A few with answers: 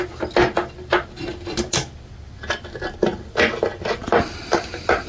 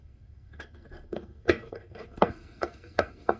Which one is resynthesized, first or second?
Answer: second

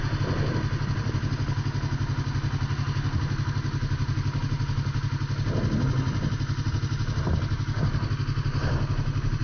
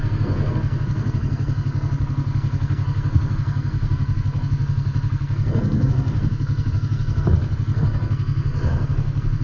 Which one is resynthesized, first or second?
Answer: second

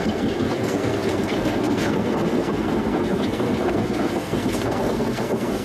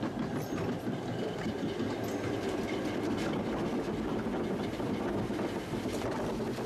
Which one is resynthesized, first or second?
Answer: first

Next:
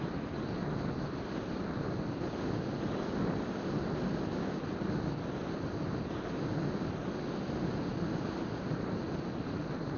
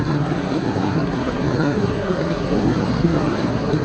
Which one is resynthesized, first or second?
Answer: second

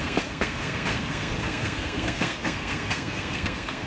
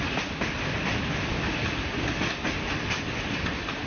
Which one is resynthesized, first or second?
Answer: first